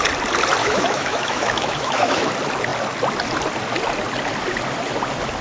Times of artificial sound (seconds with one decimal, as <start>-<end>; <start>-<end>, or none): 0.6-2.3